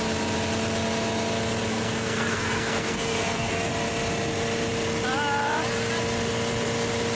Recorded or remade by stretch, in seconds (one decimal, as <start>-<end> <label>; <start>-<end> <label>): 0.0-1.7 recorded; 1.7-3.7 remade; 3.7-7.1 recorded